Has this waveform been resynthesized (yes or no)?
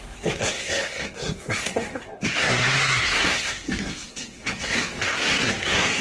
yes